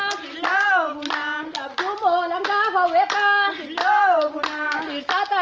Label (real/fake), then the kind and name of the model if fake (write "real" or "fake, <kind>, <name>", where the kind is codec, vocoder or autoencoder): real